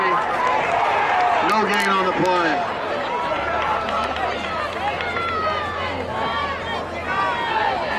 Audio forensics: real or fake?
real